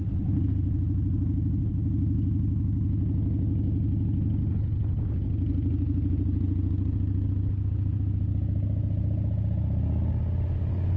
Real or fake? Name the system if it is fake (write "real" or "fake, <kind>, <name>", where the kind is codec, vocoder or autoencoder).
real